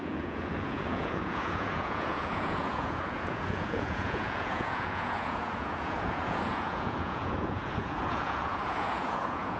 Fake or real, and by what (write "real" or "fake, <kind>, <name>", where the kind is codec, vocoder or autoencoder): fake, vocoder, Vocos